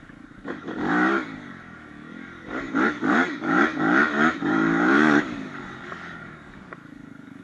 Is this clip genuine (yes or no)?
no